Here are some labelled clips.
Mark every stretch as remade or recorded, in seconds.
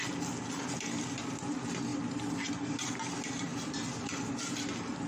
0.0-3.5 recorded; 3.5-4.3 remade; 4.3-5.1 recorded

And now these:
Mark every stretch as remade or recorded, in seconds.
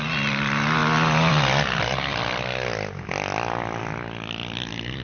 0.0-5.0 recorded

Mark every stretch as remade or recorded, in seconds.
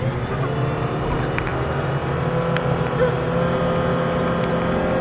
0.0-5.0 recorded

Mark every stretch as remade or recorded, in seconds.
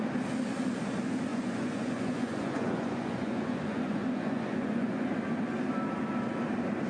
0.0-1.3 recorded; 1.3-5.1 remade; 5.1-6.9 recorded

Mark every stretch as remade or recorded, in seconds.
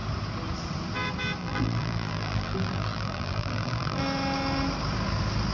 0.0-1.4 recorded; 1.4-4.0 remade; 4.0-5.5 recorded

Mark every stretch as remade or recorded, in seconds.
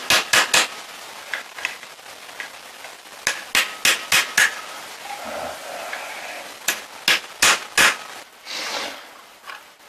0.0-9.9 recorded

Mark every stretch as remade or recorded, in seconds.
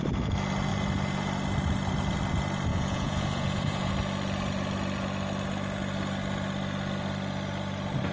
0.0-2.7 recorded; 2.7-3.9 remade; 3.9-8.1 recorded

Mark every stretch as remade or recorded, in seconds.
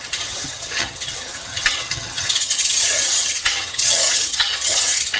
0.0-5.2 remade